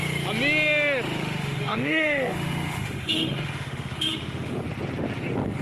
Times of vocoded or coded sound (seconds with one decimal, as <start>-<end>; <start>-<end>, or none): 1.2-4.6